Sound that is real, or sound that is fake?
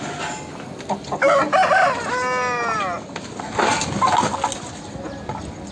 real